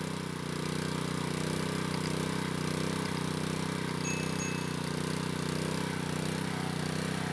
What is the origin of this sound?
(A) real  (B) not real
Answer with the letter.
A